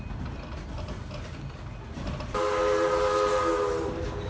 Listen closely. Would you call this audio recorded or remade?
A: recorded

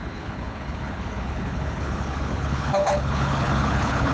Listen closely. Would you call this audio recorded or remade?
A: remade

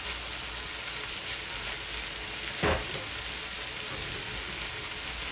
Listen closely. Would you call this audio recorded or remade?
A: recorded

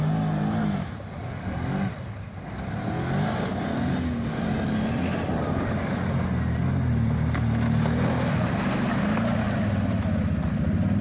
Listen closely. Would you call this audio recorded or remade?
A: recorded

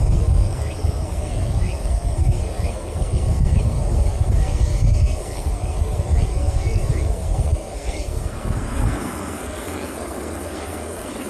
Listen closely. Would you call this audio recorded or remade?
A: remade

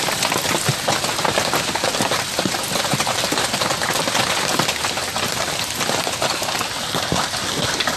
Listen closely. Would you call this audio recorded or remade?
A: recorded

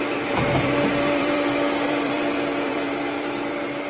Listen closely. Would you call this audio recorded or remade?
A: remade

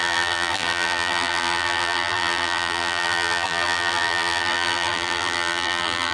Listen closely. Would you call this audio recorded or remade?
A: remade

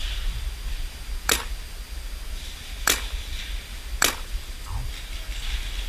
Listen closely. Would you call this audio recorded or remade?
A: recorded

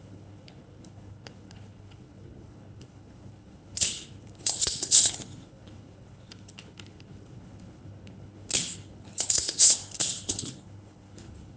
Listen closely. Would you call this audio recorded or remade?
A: remade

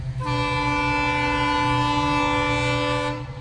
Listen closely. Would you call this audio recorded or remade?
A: recorded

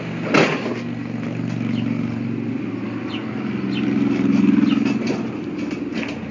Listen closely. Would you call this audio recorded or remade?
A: recorded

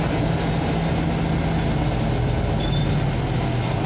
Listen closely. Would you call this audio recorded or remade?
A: recorded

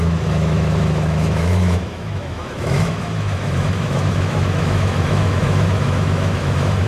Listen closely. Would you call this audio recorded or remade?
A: remade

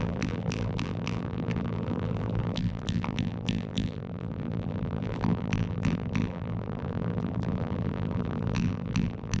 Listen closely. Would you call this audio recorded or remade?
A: remade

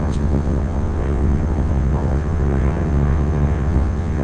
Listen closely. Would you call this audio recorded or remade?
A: remade